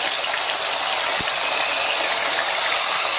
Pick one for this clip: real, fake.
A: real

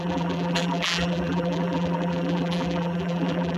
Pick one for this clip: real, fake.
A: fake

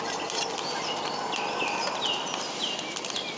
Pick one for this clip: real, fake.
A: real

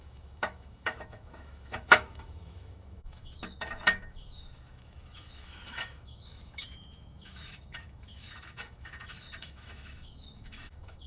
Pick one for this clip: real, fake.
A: fake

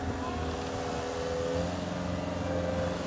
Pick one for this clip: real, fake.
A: real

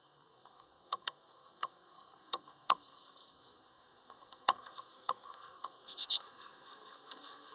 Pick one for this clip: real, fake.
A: fake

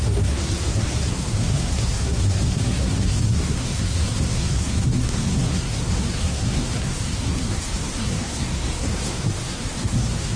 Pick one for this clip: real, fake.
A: fake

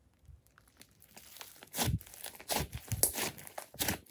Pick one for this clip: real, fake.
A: real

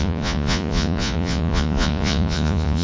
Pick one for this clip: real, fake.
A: fake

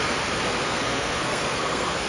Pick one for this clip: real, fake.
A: fake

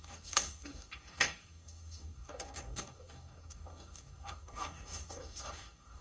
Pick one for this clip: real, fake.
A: fake